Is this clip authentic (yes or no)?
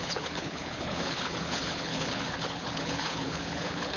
no